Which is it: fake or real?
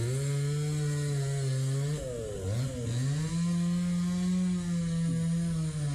real